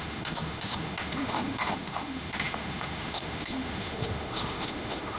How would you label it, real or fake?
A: fake